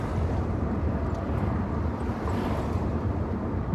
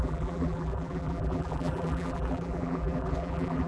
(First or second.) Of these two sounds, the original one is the first